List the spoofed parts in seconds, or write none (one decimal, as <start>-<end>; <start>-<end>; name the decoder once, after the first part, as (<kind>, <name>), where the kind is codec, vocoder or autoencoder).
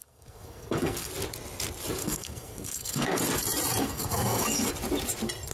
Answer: 0.0-1.1 (codec, SNAC); 2.0-3.2; 3.8-4.7